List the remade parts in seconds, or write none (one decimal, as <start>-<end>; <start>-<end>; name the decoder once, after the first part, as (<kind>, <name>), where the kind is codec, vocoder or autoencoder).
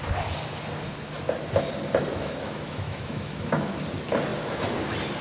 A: 2.1-3.7 (autoencoder, DAC-VAE)